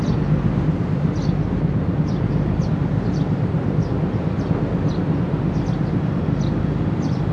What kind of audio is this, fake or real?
real